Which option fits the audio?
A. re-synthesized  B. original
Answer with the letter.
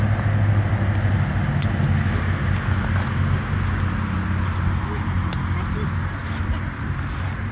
B